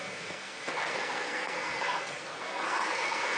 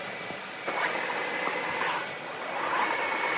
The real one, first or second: second